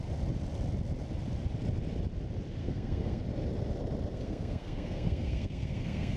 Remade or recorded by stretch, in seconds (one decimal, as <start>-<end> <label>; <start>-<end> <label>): 0.0-2.6 recorded; 2.6-3.2 remade; 3.2-4.1 recorded; 4.1-6.2 remade